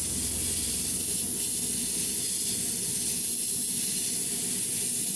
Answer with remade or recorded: recorded